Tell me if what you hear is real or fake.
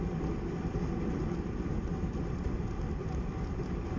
real